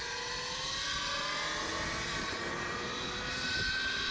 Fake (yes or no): no